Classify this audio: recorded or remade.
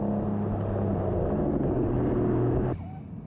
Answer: recorded